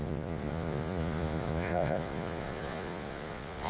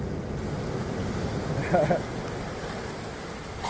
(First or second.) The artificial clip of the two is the first